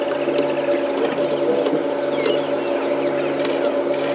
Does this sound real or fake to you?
real